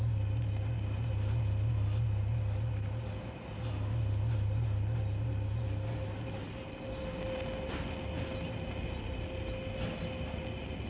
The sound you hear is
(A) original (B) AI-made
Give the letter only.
A